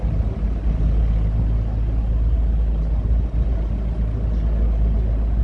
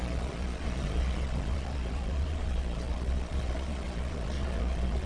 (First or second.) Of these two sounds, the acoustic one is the first